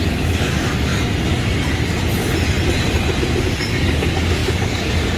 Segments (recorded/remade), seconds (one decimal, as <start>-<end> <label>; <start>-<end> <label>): 0.0-0.9 remade; 0.9-3.4 recorded; 3.4-5.2 remade